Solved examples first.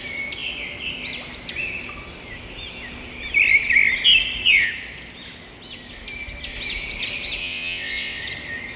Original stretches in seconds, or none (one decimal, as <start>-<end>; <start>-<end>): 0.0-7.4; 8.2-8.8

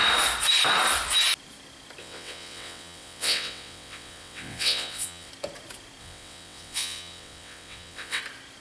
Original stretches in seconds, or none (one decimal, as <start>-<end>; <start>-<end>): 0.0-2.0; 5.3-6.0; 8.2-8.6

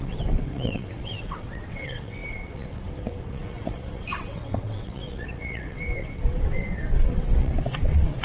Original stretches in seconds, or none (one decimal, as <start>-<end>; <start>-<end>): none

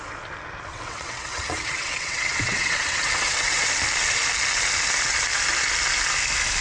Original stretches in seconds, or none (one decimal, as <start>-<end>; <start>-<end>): 0.0-0.7; 3.7-6.6

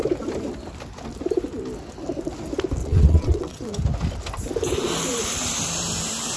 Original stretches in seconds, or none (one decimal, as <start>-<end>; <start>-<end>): 0.0-2.8; 3.7-6.4